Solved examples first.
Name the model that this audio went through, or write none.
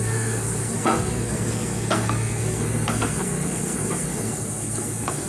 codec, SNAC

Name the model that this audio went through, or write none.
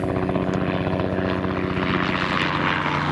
none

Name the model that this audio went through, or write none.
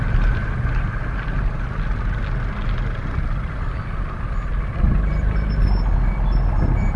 none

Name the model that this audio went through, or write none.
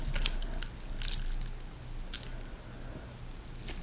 none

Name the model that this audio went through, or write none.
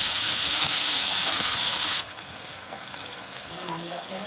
codec, SNAC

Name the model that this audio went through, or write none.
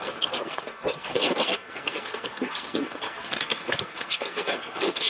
codec, SNAC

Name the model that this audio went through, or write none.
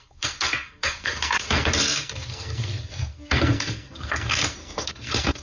codec, SNAC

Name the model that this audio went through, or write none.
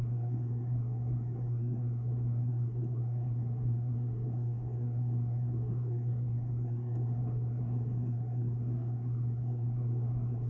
codec, SNAC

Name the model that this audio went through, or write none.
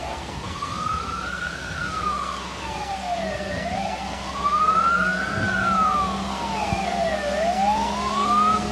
codec, SNAC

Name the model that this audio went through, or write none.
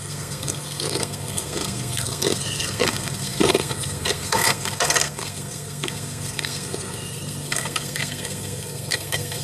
codec, SNAC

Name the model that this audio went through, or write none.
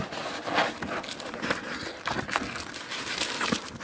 none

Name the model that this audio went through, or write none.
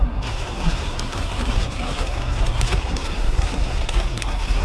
codec, SNAC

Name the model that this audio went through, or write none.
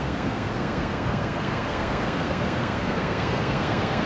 codec, SNAC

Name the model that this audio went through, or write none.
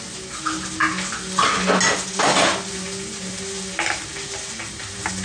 none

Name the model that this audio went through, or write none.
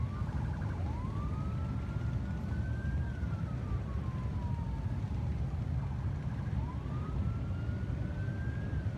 none